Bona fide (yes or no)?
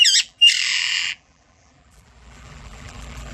no